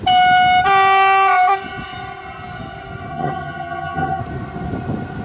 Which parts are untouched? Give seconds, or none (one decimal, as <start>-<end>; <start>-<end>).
0.0-3.1; 4.2-5.2